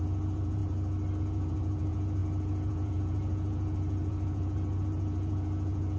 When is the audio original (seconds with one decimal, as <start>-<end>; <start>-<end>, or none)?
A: 0.6-1.2